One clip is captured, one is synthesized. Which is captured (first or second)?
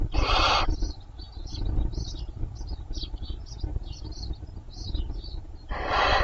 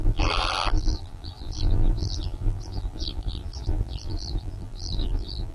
first